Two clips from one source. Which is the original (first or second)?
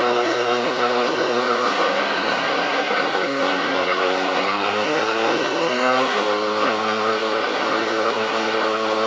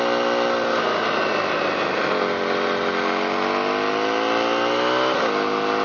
second